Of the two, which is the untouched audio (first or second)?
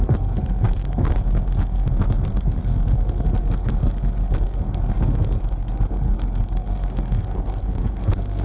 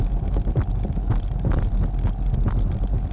second